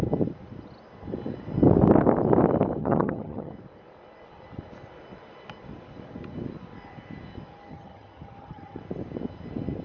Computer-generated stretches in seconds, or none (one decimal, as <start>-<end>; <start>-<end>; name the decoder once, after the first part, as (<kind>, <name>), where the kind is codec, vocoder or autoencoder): 2.8-3.5 (vocoder, HiFi-GAN); 7.7-8.8